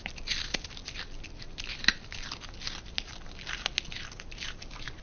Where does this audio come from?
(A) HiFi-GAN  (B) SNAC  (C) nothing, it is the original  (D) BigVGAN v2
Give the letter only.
C